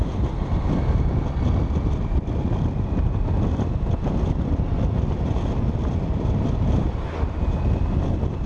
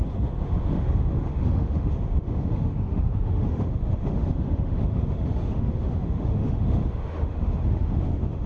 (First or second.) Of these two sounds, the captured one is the first